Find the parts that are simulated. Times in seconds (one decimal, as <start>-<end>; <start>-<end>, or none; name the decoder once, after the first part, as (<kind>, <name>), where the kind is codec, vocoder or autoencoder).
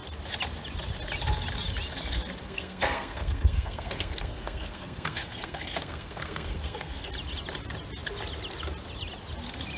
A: 2.4-7.1 (codec, SNAC)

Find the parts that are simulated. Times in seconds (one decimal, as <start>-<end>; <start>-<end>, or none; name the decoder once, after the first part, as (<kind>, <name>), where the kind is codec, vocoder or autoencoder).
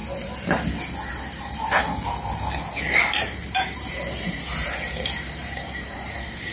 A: 1.1-1.8 (vocoder, BigVGAN v2); 3.0-4.5; 5.3-6.5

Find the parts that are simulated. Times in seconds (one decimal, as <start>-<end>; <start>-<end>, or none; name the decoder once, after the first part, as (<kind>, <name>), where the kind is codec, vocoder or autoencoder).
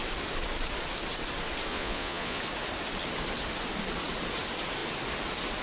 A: 1.7-2.4 (vocoder, Vocos)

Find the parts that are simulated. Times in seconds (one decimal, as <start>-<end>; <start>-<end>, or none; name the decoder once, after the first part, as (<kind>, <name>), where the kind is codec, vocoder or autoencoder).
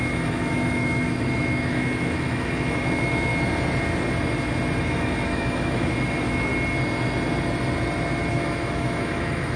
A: 0.0-3.3 (autoencoder, DAC-VAE); 4.8-6.5; 8.3-9.6